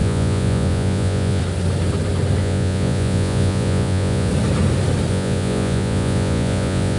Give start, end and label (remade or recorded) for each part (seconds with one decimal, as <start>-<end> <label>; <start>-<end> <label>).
0.0-1.4 remade; 1.4-2.4 recorded; 2.4-4.3 remade; 4.3-5.1 recorded; 5.1-7.0 remade